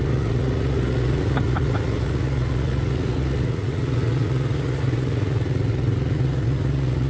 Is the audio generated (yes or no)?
yes